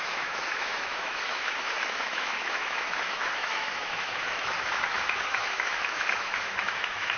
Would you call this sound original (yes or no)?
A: no